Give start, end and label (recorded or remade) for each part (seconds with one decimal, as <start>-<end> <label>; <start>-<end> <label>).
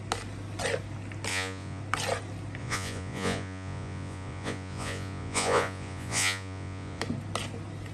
0.0-1.3 recorded; 1.3-1.8 remade; 1.8-2.6 recorded; 2.6-7.0 remade; 7.0-7.9 recorded